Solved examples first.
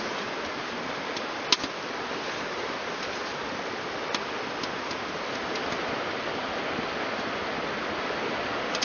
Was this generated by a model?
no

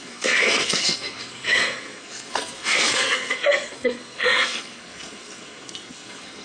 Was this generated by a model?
yes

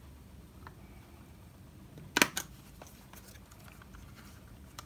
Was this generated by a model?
no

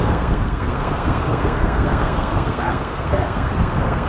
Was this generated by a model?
yes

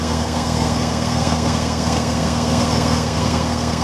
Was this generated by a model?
yes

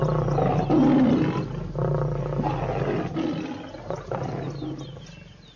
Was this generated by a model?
no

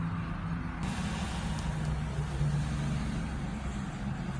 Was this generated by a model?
no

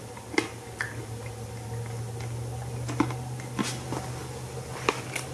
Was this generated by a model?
no